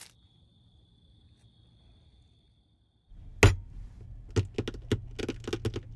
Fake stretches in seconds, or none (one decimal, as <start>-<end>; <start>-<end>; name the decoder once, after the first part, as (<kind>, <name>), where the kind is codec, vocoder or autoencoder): none